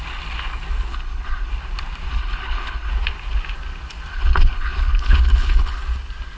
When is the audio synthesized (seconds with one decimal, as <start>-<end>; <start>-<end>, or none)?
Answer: 0.9-1.5; 2.1-2.9; 4.1-5.8